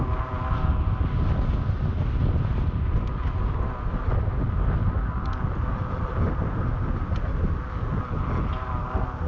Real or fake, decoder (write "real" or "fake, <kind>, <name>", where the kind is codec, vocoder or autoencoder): real